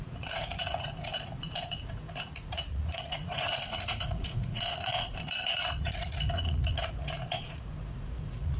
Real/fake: fake